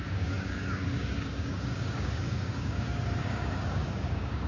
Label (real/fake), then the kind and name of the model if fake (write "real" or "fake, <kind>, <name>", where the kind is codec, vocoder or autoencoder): fake, codec, DAC